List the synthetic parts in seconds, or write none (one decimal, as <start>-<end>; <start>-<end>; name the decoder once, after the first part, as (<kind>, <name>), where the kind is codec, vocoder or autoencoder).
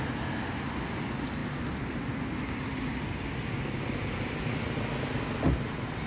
none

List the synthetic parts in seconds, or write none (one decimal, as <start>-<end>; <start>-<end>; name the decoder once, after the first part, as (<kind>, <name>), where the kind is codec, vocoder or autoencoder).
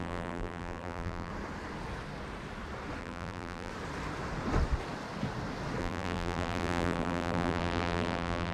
0.0-1.3 (vocoder, BigVGAN v2); 3.0-3.7; 5.8-8.5